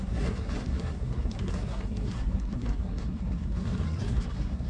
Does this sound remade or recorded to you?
remade